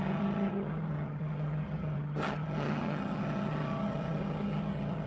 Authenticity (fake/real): fake